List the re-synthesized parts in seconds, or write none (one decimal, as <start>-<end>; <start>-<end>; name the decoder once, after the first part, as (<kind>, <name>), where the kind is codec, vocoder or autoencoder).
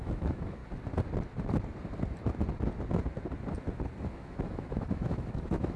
0.0-0.6 (autoencoder, DAC-VAE); 4.1-5.8